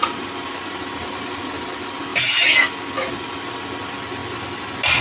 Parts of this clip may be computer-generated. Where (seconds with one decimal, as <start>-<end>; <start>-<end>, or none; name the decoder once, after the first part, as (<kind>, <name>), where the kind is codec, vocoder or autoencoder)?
0.0-0.6 (vocoder, BigVGAN v2)